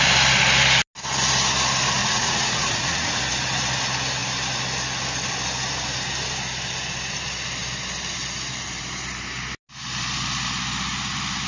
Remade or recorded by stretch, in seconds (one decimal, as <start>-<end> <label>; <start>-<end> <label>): 0.0-2.0 recorded; 2.0-3.2 remade; 3.2-11.5 recorded